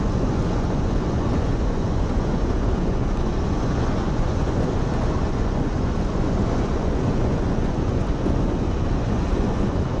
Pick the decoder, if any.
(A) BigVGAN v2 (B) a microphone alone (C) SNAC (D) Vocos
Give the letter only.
D